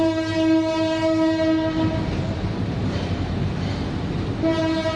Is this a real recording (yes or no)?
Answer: yes